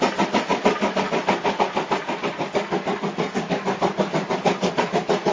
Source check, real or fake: real